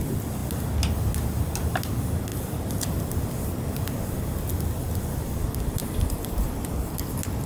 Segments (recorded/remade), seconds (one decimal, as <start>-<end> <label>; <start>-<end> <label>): 0.0-7.5 recorded